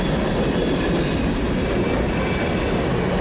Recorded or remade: recorded